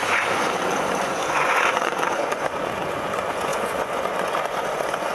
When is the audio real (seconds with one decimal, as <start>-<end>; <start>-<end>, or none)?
none